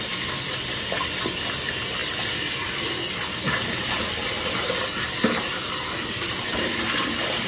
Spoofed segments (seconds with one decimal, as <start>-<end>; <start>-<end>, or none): none